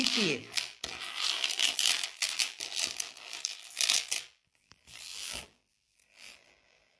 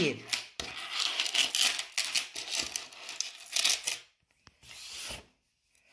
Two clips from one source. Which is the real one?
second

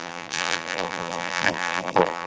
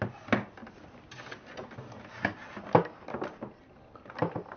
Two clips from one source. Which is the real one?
second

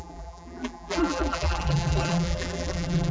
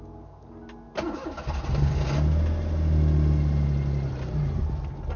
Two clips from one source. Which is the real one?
second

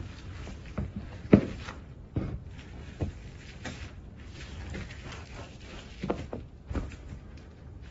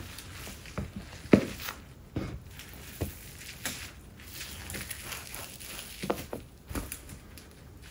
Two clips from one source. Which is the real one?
second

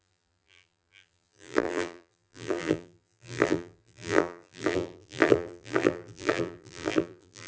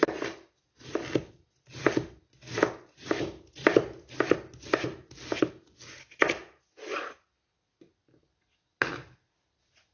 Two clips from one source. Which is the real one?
second